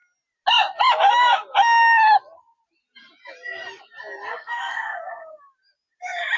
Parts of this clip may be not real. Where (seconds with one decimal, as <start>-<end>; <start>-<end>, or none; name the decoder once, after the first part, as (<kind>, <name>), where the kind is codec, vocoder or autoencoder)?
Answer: 4.3-5.4 (codec, SNAC)

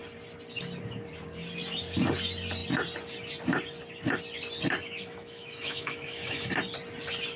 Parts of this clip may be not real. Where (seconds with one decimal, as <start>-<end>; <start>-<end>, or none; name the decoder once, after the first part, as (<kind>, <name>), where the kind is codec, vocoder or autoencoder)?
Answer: 4.8-6.5 (autoencoder, DAC-VAE)

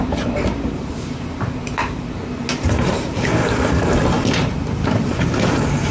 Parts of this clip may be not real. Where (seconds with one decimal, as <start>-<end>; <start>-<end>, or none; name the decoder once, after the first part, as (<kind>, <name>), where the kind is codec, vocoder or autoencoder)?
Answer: 0.0-2.2 (vocoder, BigVGAN v2); 2.8-3.4; 4.3-5.9